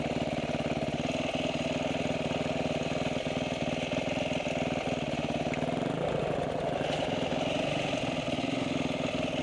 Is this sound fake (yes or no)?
no